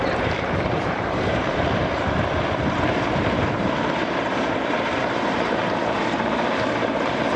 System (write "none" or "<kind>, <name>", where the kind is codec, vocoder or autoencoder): vocoder, BigVGAN v2